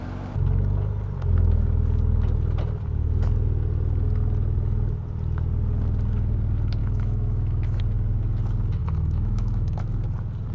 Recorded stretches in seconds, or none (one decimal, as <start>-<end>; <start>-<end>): 0.0-6.8; 7.8-8.8; 9.8-10.5